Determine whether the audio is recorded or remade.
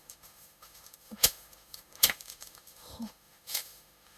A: remade